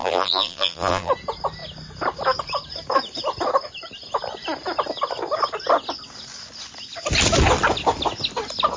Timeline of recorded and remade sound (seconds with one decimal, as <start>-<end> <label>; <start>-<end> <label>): 0.0-1.1 remade; 1.1-8.8 recorded